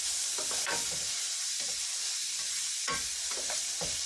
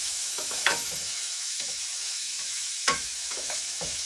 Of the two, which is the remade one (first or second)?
second